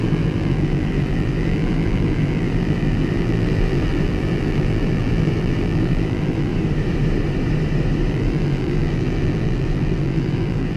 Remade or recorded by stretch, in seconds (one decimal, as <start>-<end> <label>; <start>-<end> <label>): 0.0-6.5 remade; 6.5-8.1 recorded; 8.1-10.8 remade